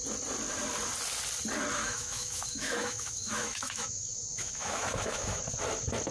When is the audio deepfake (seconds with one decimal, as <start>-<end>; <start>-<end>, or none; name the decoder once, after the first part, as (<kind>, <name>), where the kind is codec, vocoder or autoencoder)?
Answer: 1.8-5.4 (autoencoder, DAC-VAE)